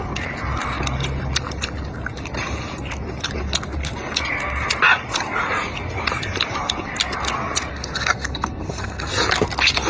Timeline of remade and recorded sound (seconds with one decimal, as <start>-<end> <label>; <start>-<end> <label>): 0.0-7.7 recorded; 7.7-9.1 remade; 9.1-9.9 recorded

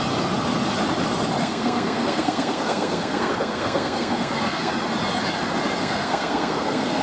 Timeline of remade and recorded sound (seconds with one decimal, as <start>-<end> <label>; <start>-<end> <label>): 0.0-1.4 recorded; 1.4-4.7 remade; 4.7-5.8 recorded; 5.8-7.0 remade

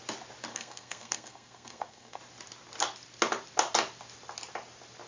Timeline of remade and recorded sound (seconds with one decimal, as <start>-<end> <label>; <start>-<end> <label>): 0.0-0.5 recorded; 0.5-2.2 remade; 2.2-5.1 recorded

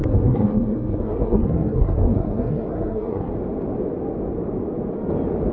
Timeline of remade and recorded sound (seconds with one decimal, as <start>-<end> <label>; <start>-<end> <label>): 0.0-3.3 remade; 3.3-5.5 recorded

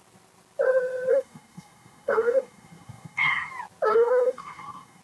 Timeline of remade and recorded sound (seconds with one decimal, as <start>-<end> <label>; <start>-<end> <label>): 0.0-1.1 recorded; 1.1-3.5 remade; 3.5-3.9 recorded; 3.9-5.0 remade

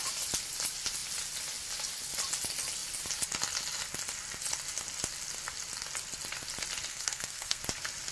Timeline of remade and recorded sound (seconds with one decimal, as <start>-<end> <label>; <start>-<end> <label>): 0.0-6.9 recorded; 6.9-7.6 remade; 7.6-8.1 recorded